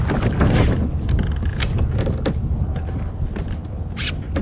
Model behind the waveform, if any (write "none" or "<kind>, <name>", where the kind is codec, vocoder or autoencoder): none